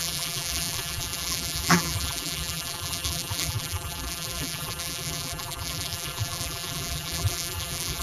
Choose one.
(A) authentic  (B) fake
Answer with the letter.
B